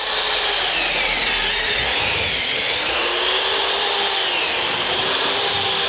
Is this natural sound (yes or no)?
yes